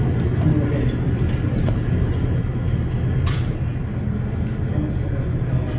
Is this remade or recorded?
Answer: recorded